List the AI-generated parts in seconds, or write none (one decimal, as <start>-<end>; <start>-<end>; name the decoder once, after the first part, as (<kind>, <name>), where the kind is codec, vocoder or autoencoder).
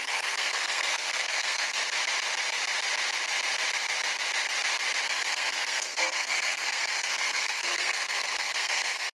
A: 0.0-1.8 (codec, SNAC); 5.3-9.1